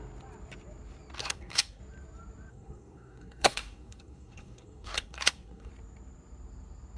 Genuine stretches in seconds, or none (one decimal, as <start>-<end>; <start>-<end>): 0.0-1.2; 1.8-2.5; 5.7-7.0